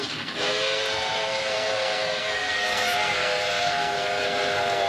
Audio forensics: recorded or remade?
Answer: remade